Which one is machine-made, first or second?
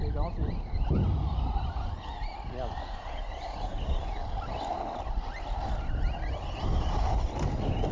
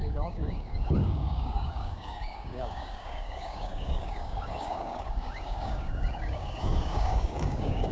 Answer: second